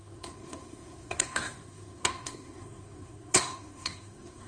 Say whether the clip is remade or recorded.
remade